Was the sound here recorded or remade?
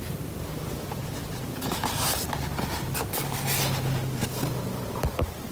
recorded